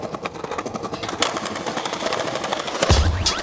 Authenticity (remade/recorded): recorded